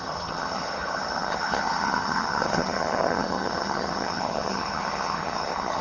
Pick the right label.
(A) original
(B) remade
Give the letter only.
B